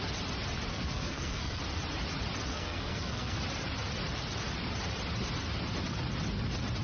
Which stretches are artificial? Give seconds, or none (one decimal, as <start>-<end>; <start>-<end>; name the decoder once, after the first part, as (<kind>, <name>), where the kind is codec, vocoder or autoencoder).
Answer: 0.7-1.6 (codec, SNAC); 2.5-3.4